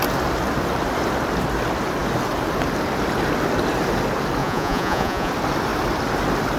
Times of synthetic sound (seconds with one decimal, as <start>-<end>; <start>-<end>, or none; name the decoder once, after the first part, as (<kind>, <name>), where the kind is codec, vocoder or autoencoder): 4.4-5.3 (vocoder, Vocos)